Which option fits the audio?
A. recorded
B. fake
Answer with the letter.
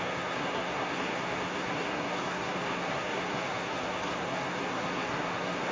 B